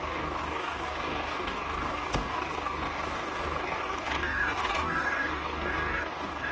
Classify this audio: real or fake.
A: fake